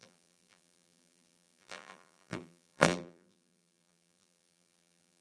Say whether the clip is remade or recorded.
remade